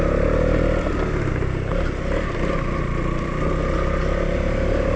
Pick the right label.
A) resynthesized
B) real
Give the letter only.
B